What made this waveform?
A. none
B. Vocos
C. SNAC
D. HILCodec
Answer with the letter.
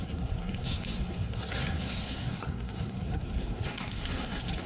C